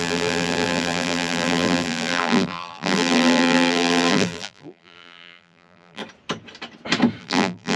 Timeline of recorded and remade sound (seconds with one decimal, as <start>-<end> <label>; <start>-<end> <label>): 0.0-6.0 remade; 6.0-7.2 recorded; 7.2-7.8 remade